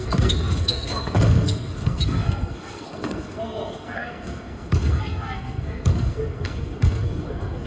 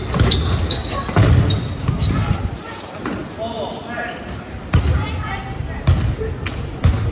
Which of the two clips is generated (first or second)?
first